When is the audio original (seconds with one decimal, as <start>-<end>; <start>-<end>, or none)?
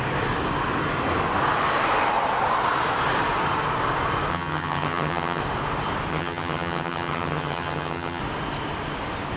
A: 0.0-4.3; 5.4-6.1; 8.2-9.4